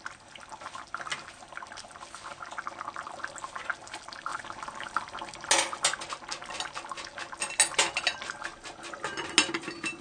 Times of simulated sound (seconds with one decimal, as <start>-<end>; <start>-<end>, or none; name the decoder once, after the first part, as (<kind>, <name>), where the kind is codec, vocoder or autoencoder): none